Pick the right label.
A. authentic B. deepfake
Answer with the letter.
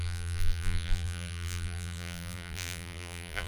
B